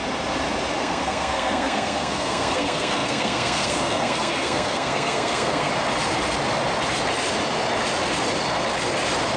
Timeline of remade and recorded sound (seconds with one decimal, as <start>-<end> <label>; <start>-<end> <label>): 0.0-0.8 recorded; 0.8-5.7 remade; 5.7-9.4 recorded